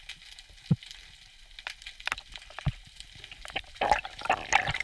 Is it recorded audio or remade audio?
recorded